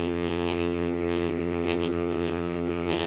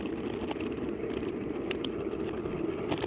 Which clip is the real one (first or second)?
second